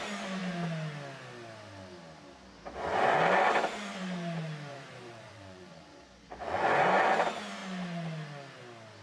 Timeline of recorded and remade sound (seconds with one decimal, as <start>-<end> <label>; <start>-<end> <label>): 0.0-4.7 recorded; 4.7-7.0 remade; 7.0-9.0 recorded